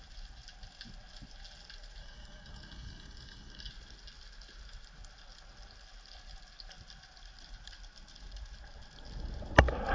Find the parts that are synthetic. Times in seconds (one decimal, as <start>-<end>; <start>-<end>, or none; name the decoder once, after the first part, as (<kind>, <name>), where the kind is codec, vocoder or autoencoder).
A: 2.0-3.7 (codec, DAC)